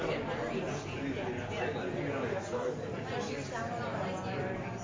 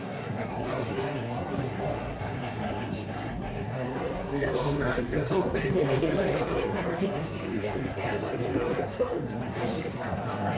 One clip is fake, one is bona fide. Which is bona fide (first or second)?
first